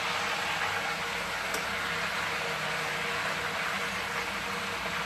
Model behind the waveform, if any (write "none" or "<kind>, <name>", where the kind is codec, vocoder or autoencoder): none